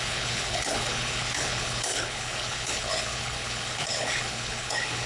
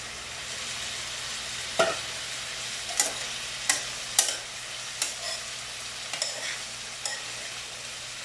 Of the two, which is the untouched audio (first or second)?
second